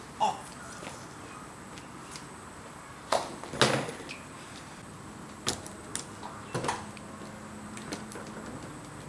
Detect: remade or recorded recorded